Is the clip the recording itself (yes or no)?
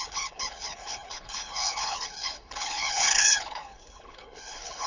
no